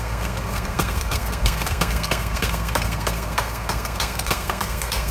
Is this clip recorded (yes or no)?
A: no